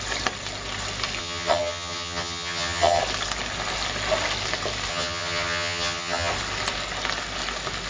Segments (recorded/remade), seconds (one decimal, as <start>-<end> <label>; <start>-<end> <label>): 0.0-1.2 recorded; 1.2-3.0 remade; 3.0-4.9 recorded; 4.9-6.3 remade; 6.3-7.9 recorded